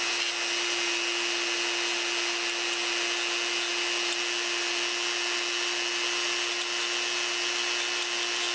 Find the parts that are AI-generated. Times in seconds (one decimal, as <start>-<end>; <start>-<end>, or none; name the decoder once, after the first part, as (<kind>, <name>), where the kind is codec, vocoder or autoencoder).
none

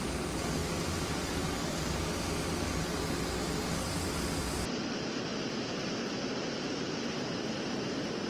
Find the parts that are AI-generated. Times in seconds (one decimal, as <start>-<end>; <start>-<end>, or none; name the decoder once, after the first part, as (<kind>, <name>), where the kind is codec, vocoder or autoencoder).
none

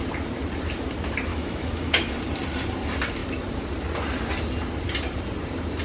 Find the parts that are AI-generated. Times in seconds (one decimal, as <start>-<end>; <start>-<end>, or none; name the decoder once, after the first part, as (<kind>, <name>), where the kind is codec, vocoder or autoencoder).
1.3-2.1 (autoencoder, DAC-VAE)

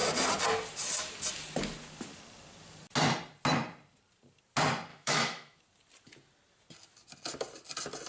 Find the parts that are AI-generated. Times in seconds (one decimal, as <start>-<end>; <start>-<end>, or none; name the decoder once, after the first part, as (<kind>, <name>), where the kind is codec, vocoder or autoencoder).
4.9-5.6 (autoencoder, DAC-VAE)

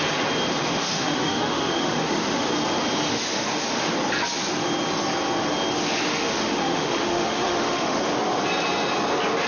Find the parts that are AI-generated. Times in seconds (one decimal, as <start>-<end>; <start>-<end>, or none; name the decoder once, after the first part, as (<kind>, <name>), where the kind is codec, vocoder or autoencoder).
0.8-2.5 (autoencoder, DAC-VAE); 3.1-3.9; 6.1-8.0

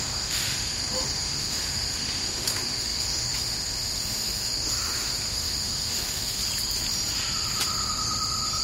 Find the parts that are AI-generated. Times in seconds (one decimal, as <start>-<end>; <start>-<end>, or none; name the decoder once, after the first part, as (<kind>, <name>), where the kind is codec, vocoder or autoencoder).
0.0-6.4 (autoencoder, DAC-VAE)

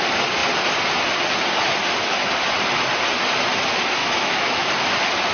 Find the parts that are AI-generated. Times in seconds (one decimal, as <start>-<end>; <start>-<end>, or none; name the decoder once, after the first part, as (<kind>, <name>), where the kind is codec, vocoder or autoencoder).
4.0-4.7 (autoencoder, DAC-VAE)

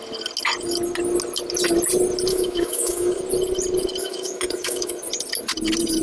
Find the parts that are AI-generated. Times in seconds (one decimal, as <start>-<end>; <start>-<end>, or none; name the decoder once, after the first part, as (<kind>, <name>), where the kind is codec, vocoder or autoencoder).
2.3-3.2 (autoencoder, DAC-VAE); 4.0-5.0